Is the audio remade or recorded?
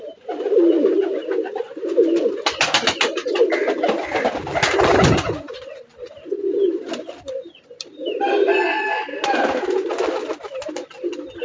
recorded